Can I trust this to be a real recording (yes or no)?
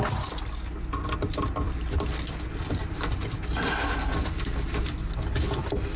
yes